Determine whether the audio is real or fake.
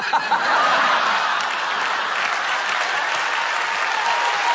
real